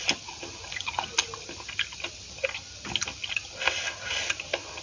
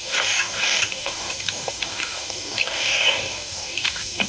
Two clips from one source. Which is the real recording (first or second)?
first